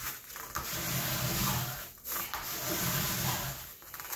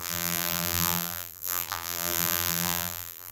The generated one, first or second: second